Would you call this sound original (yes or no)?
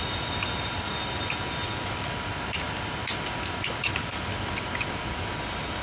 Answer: yes